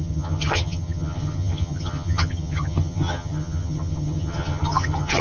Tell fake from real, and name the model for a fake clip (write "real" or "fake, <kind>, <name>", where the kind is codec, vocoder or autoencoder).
fake, vocoder, HiFi-GAN